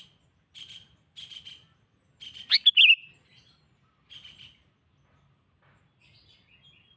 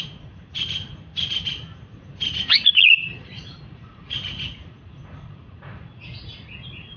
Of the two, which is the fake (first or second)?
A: second